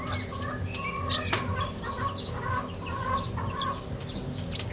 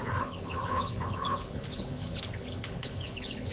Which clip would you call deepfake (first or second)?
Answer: second